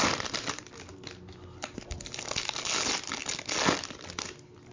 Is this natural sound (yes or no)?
yes